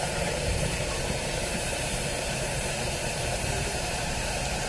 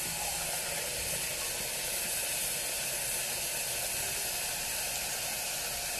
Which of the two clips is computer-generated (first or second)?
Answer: first